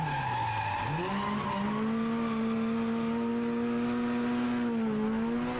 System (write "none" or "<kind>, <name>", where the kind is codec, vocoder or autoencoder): none